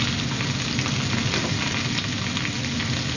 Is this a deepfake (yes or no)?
no